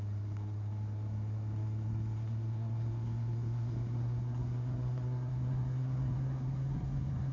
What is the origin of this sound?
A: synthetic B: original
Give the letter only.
A